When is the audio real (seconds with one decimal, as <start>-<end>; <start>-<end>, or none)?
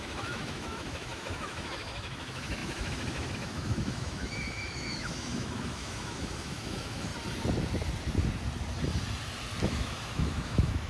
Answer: 7.1-9.6